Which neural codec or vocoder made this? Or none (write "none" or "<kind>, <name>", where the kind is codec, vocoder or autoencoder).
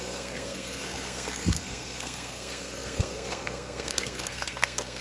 codec, SNAC